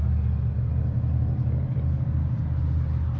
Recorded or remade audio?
recorded